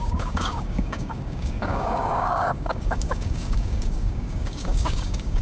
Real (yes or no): no